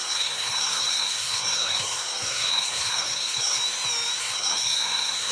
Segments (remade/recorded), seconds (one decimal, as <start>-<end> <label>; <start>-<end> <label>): 0.0-3.6 remade; 3.6-4.2 recorded; 4.2-5.3 remade